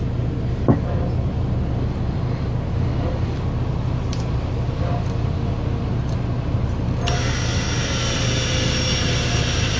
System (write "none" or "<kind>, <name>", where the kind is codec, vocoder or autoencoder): none